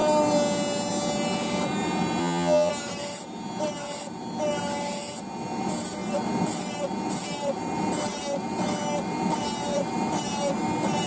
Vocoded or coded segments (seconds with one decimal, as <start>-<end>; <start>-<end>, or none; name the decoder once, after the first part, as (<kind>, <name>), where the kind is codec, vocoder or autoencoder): 2.2-2.7 (vocoder, HiFi-GAN)